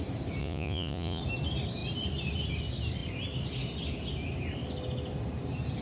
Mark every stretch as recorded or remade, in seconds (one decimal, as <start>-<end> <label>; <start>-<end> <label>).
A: 0.0-0.4 recorded; 0.4-1.2 remade; 1.2-5.8 recorded